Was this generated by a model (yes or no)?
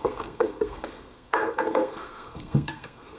yes